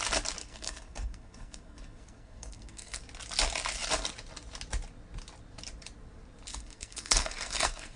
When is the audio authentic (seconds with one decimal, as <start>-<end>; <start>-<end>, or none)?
0.0-0.4; 3.0-6.5